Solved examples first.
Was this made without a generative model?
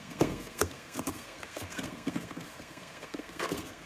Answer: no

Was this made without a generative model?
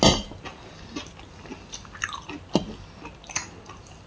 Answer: yes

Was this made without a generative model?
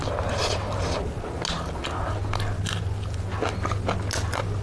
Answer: yes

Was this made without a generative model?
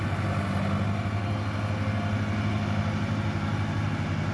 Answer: yes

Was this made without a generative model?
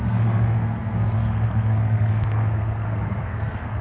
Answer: no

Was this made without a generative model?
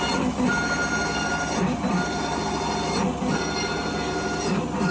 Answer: yes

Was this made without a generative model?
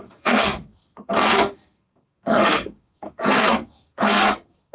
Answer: no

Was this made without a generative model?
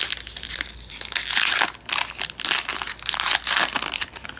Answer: yes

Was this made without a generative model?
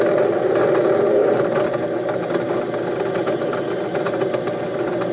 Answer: yes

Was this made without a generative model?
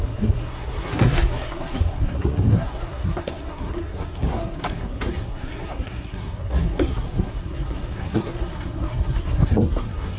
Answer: no